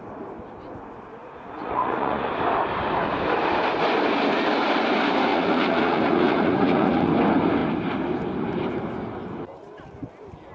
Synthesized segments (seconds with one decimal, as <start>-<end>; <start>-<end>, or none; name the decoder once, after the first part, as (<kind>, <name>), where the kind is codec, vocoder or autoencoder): 1.2-2.3 (vocoder, Vocos); 5.3-7.1